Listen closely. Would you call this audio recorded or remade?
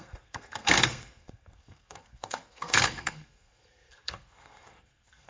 remade